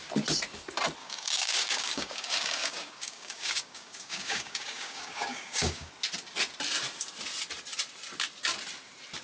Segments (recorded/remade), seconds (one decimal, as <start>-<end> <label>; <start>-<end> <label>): 0.0-1.0 recorded; 1.0-5.9 remade; 5.9-9.2 recorded